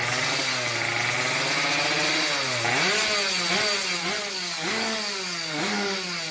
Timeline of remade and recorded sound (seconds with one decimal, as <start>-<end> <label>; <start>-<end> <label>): 0.0-0.5 remade; 0.5-4.3 recorded; 4.3-6.3 remade